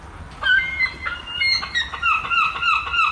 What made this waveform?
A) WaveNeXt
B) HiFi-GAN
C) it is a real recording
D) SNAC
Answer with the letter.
C